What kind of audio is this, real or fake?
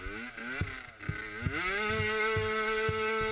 real